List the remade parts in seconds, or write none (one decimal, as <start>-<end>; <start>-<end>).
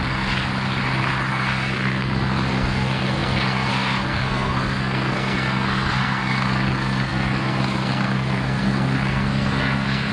0.0-0.5; 1.3-10.1